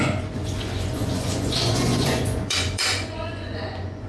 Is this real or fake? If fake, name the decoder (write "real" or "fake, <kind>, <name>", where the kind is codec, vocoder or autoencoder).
fake, vocoder, Vocos